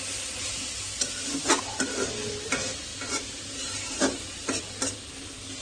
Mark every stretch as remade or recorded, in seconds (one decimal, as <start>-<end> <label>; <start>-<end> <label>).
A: 0.0-5.6 recorded